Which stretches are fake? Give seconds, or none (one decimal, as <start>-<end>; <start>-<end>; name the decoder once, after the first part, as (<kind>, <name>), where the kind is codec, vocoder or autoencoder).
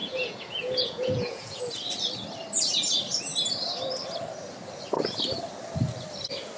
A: 0.0-1.6 (vocoder, Vocos)